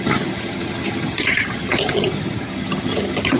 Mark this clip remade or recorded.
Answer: remade